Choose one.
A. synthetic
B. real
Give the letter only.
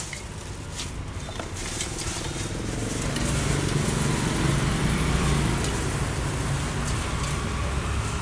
B